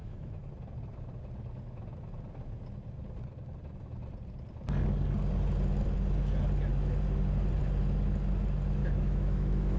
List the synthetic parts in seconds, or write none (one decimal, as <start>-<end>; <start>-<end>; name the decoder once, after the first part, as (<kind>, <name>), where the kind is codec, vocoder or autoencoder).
0.0-0.5 (autoencoder, DAC-VAE); 8.8-9.8